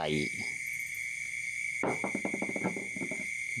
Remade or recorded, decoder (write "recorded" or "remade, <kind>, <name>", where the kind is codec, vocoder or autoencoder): recorded